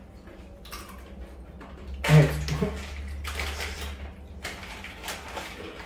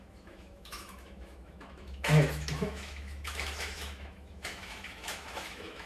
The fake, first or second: second